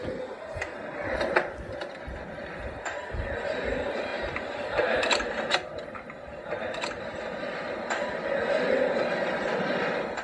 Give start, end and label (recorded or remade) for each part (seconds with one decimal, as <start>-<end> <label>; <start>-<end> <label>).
0.0-10.2 recorded